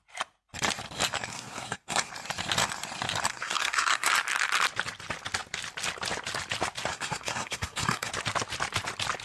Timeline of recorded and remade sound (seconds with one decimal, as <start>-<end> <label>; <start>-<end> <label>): 0.0-1.3 recorded; 1.3-2.1 remade; 2.1-3.3 recorded; 3.3-4.1 remade; 4.1-6.9 recorded; 6.9-8.1 remade; 8.1-9.2 recorded